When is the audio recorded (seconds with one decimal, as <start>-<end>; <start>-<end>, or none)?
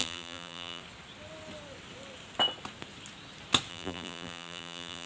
0.8-3.7